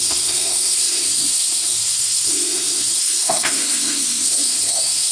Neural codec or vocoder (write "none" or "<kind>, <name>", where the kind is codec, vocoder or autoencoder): codec, SNAC